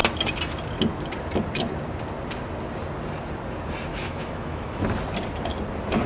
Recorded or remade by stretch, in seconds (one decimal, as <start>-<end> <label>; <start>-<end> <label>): 0.0-3.9 recorded; 3.9-4.8 remade; 4.8-6.1 recorded